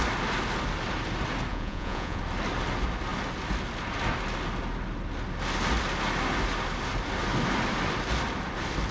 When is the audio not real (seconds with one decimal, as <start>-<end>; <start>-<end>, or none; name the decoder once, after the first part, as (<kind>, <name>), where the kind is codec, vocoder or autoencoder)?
1.5-2.2 (vocoder, Vocos)